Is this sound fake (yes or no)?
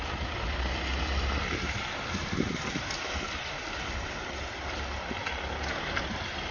yes